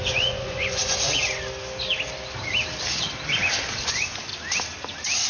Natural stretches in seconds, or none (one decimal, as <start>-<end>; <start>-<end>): 1.2-3.8; 4.3-5.3